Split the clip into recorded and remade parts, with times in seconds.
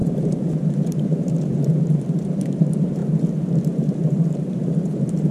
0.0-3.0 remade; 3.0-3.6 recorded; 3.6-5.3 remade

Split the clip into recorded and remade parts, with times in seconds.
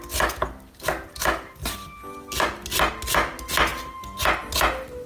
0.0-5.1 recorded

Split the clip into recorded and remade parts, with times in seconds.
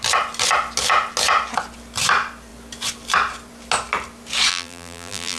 0.0-4.5 recorded; 4.5-5.4 remade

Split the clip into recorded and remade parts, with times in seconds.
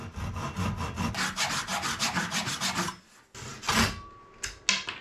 0.0-1.1 remade; 1.1-1.7 recorded; 1.7-2.5 remade; 2.5-5.0 recorded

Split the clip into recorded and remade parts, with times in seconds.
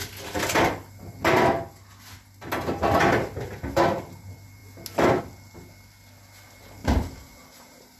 0.0-6.8 recorded; 6.8-8.0 remade